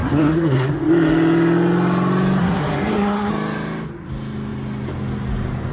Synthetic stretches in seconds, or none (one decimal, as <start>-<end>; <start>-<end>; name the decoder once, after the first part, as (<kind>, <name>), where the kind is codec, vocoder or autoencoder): 0.0-0.7 (codec, SNAC); 2.4-3.3